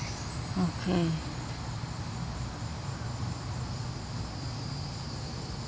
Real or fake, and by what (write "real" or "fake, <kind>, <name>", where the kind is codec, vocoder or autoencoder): real